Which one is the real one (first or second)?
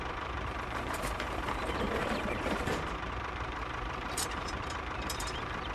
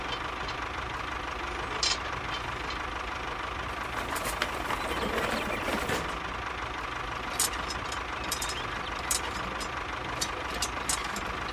second